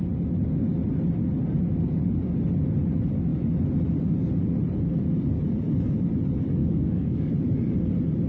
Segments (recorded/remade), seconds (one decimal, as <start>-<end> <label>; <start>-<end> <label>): 0.0-6.6 recorded; 6.6-7.3 remade; 7.3-8.3 recorded